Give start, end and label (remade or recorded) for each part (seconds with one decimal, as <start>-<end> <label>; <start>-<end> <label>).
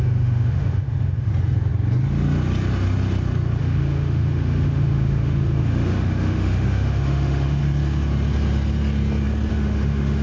0.0-1.3 remade; 1.3-3.6 recorded; 3.6-7.6 remade; 7.6-9.5 recorded; 9.5-10.2 remade